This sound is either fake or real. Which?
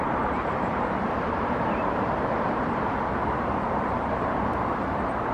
fake